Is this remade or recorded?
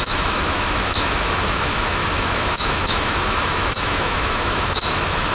remade